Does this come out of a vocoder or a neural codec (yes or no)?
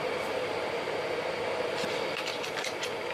no